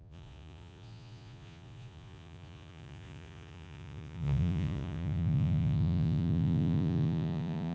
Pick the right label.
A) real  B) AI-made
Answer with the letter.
B